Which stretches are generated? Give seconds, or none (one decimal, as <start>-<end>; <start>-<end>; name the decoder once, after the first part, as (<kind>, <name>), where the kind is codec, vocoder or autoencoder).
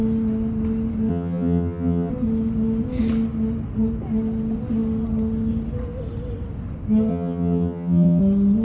1.1-2.1 (vocoder, HiFi-GAN); 7.1-8.2